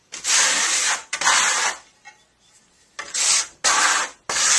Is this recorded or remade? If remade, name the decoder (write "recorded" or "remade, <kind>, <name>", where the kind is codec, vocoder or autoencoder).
recorded